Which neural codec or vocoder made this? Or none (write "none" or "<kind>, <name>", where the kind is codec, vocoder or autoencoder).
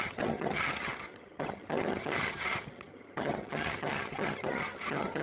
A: vocoder, HiFi-GAN